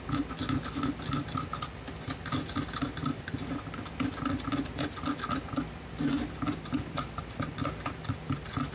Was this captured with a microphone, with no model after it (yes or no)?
yes